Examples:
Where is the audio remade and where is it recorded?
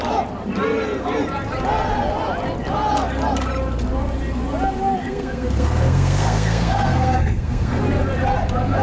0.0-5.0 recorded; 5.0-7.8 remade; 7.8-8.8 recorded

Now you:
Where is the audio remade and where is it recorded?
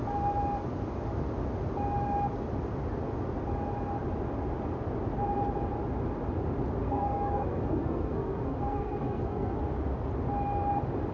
0.0-6.8 recorded; 6.8-9.6 remade; 9.6-11.1 recorded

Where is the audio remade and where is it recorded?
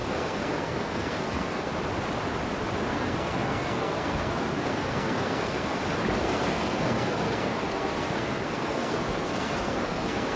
0.0-1.7 remade; 1.7-2.9 recorded; 2.9-5.8 remade; 5.8-6.2 recorded; 6.2-10.4 remade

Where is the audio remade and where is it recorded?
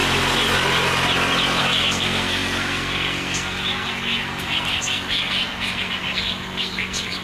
0.0-1.6 recorded; 1.6-7.2 remade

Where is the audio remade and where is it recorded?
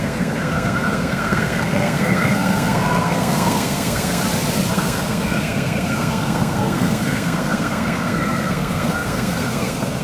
0.0-4.2 remade; 4.2-4.7 recorded; 4.7-10.0 remade